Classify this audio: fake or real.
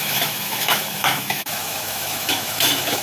fake